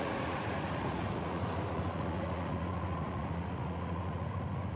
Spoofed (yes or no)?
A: yes